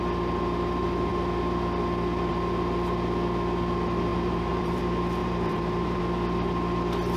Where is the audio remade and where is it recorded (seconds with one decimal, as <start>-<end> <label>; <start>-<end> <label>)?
0.0-4.1 recorded; 4.1-4.8 remade; 4.8-5.2 recorded; 5.2-6.0 remade; 6.0-7.2 recorded

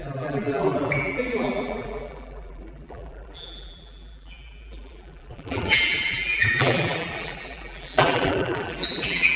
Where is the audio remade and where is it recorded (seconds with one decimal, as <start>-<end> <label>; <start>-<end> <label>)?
0.0-9.4 remade

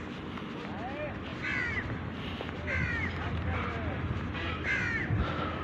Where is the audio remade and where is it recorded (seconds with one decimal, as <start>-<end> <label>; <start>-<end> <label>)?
0.0-1.3 recorded; 1.3-4.5 remade; 4.5-5.6 recorded